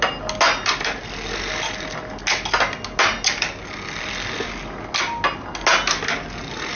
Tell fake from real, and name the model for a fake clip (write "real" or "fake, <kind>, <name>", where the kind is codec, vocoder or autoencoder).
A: real